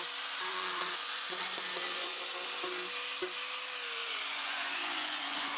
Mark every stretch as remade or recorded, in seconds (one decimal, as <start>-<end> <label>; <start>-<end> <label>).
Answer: 0.0-0.5 recorded; 0.5-2.2 remade; 2.2-4.0 recorded; 4.0-5.6 remade